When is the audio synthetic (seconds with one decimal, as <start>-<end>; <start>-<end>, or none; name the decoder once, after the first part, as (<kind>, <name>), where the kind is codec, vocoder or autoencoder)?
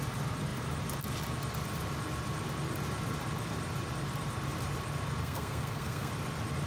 5.2-6.1 (codec, SNAC)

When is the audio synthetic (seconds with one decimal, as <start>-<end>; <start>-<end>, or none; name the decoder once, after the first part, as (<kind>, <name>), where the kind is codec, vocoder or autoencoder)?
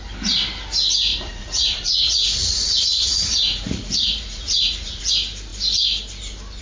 1.1-5.1 (vocoder, Vocos)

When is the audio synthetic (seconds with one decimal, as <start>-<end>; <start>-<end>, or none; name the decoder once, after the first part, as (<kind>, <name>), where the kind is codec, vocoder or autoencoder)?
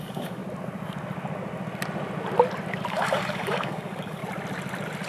0.0-0.4 (codec, DAC); 2.9-4.2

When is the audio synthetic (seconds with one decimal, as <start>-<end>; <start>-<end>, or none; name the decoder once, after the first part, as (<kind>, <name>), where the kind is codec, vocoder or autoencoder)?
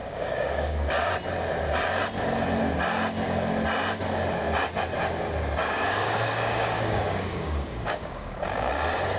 0.0-1.1 (codec, DAC); 5.6-8.7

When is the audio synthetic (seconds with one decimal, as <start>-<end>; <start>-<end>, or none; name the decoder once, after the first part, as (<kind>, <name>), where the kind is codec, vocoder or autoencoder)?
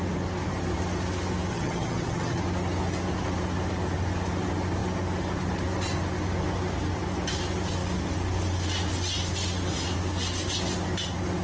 1.5-2.4 (vocoder, HiFi-GAN)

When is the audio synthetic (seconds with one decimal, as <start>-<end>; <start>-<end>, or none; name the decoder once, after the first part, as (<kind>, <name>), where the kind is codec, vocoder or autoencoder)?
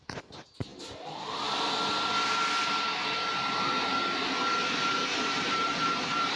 0.0-0.7 (vocoder, BigVGAN v2); 4.5-6.4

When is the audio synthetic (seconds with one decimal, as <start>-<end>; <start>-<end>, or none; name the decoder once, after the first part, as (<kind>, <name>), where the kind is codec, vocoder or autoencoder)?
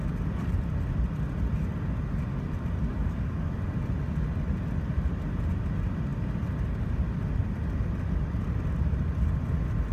2.9-3.6 (codec, DAC)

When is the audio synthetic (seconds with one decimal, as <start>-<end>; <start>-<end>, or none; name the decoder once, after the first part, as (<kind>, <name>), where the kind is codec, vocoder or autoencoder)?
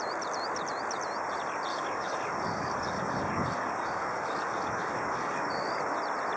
1.7-5.5 (codec, DAC)